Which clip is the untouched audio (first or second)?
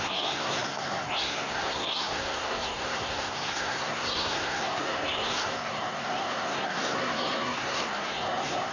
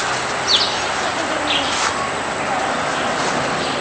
second